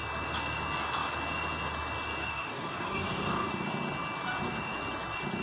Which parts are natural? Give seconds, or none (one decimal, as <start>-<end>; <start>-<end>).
0.0-2.2; 3.5-5.4